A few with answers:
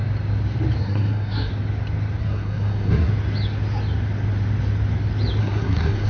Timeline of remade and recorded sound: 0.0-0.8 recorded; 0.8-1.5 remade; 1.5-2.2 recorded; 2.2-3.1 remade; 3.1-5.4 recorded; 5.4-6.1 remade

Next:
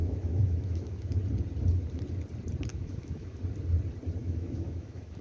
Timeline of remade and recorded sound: 0.0-1.2 remade; 1.2-2.7 recorded; 2.7-3.4 remade; 3.4-4.2 recorded; 4.2-5.2 remade

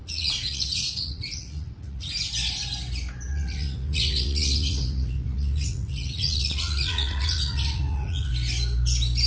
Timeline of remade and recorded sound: 0.0-2.3 remade; 2.3-3.3 recorded; 3.3-8.3 remade; 8.3-9.3 recorded

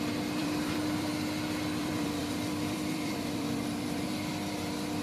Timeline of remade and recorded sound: 0.0-0.4 recorded; 0.4-1.1 remade; 1.1-1.8 recorded; 1.8-4.1 remade; 4.1-5.0 recorded

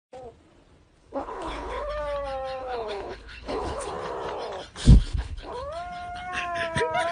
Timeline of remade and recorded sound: 0.0-1.0 recorded; 1.0-1.9 remade; 1.9-2.6 recorded; 2.6-3.9 remade; 3.9-4.9 recorded; 4.9-5.5 remade; 5.5-7.1 recorded

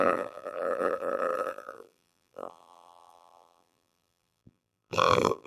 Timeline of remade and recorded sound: 0.0-5.5 remade